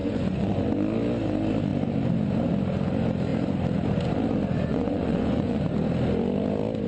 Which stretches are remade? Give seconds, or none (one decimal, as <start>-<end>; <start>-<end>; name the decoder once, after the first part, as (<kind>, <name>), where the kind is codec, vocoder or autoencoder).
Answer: 0.0-0.6 (vocoder, Vocos); 4.7-5.6